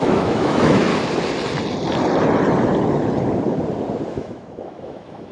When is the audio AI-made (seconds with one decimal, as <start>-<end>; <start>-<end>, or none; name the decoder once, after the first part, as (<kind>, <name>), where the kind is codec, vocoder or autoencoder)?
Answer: 0.0-0.9 (autoencoder, DAC-VAE); 4.1-5.3